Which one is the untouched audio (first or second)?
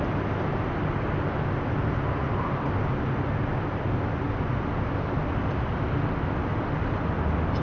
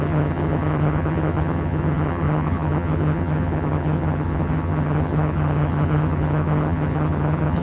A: first